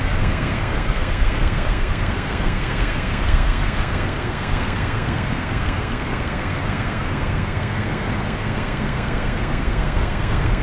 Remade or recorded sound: remade